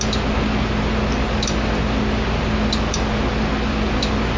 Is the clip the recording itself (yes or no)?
yes